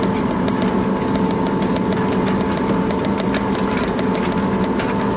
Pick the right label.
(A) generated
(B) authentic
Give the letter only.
B